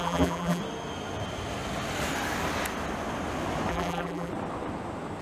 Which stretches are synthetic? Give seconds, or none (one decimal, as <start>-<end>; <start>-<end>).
0.0-0.6; 3.7-4.3